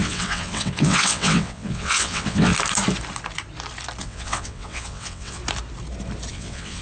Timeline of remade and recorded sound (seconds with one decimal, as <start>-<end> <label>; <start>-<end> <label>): 0.0-2.5 remade; 2.5-4.0 recorded; 4.0-5.4 remade; 5.4-6.3 recorded; 6.3-6.8 remade